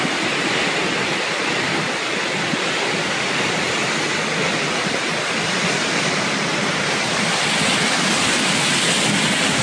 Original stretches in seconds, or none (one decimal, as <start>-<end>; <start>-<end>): 0.0-9.6